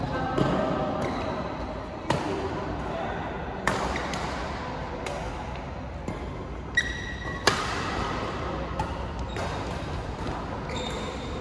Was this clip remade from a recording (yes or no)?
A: no